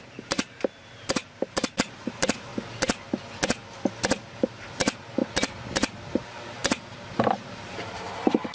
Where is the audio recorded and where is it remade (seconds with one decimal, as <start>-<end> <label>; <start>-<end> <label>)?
0.0-2.5 remade; 2.5-4.3 recorded; 4.3-5.2 remade; 5.2-6.0 recorded; 6.0-8.5 remade